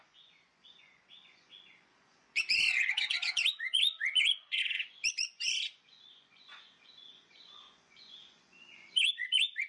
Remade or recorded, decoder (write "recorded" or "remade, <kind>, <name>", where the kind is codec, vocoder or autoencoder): remade, vocoder, Vocos